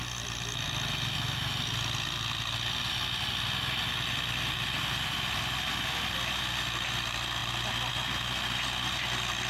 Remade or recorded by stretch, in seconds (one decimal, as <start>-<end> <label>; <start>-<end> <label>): 0.0-9.5 recorded